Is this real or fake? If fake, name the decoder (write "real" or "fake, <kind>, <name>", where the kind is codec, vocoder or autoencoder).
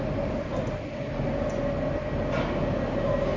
real